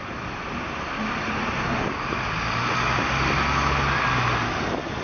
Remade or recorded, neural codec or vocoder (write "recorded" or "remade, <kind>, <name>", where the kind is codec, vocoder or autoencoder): recorded